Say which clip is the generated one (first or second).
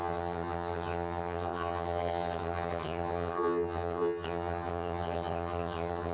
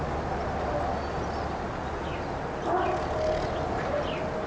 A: first